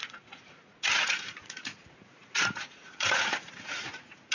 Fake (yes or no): yes